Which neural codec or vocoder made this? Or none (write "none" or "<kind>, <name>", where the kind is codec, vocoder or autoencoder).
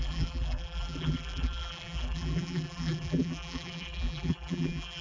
vocoder, BigVGAN v2